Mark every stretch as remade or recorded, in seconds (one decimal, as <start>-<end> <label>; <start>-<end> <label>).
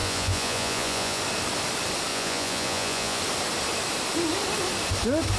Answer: 0.0-1.2 remade; 1.2-2.1 recorded; 2.1-3.2 remade; 3.2-5.4 recorded